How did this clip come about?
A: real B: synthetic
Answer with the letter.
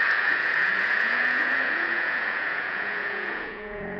B